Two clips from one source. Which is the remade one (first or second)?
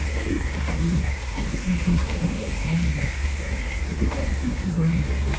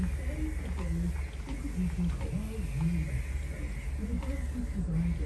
first